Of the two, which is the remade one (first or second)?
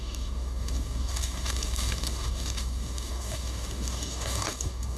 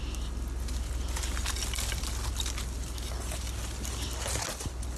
first